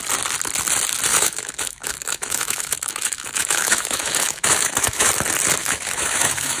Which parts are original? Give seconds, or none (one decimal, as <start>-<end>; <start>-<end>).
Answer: 0.0-1.1; 5.1-5.6

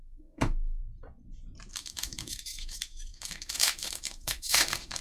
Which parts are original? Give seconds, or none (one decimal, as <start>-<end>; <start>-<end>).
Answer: 0.8-1.7

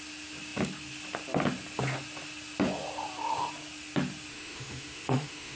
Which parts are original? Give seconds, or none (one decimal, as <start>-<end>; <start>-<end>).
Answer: 0.0-4.3